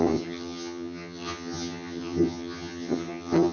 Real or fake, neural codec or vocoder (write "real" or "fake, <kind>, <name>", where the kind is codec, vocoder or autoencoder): fake, vocoder, HiFi-GAN